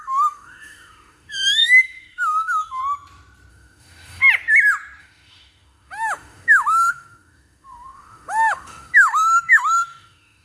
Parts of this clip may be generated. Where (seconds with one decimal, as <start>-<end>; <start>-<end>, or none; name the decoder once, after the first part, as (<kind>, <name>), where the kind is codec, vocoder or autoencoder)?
0.0-2.8 (autoencoder, DAC-VAE); 3.5-4.2; 5.0-10.4